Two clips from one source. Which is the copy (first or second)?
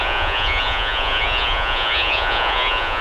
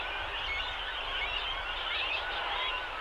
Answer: first